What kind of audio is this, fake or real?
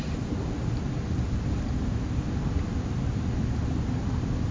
real